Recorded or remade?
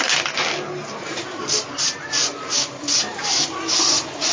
recorded